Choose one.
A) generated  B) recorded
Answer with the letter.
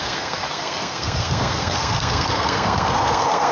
A